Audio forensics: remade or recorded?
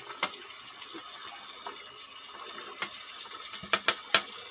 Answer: recorded